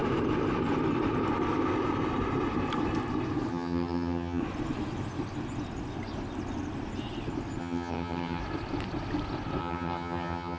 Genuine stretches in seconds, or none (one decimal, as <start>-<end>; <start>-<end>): 0.0-3.5; 4.4-7.6; 8.4-9.6